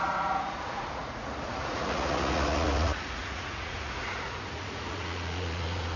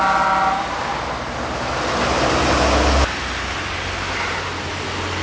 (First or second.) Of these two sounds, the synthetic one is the first